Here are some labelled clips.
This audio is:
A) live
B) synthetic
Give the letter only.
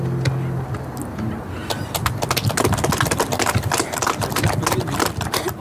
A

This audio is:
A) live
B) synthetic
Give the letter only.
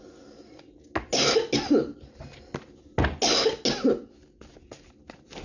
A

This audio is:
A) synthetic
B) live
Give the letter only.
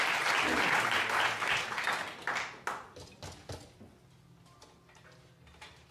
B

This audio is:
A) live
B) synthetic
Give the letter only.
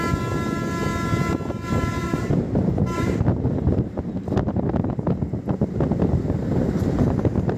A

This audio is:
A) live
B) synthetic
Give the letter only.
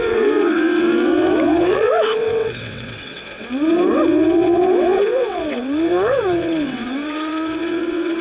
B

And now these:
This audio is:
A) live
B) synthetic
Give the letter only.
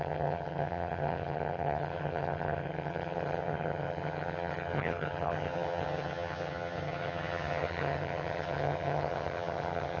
B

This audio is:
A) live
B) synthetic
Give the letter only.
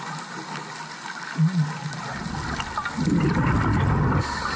A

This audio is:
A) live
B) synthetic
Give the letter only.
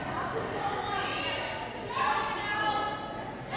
A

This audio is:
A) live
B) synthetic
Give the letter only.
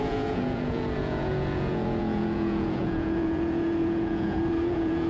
B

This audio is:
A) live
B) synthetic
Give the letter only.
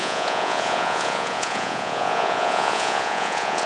B